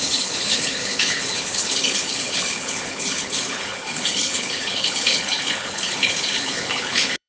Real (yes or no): no